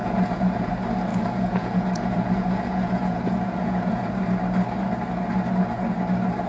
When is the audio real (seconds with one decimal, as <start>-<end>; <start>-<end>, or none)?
0.7-1.1; 4.1-6.5